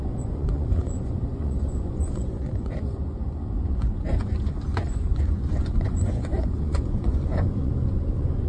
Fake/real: fake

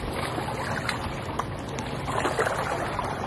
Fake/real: real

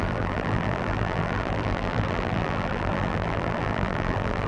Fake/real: fake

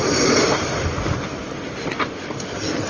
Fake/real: real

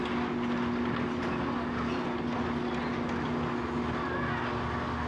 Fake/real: real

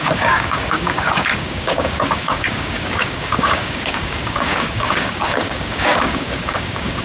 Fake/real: fake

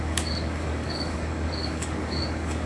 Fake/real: fake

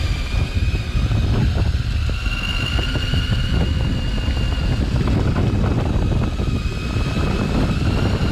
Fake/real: real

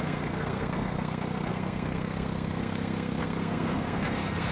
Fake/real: fake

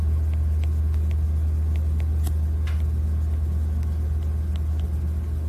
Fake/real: real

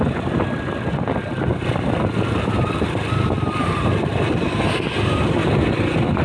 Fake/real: real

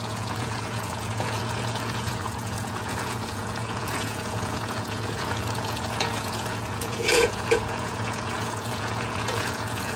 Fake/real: fake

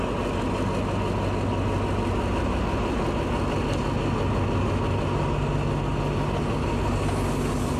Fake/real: real